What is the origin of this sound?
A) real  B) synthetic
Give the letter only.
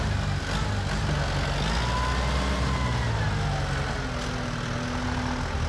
A